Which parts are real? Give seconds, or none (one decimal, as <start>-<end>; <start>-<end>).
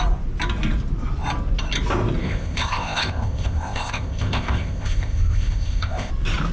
0.0-2.2; 6.1-6.5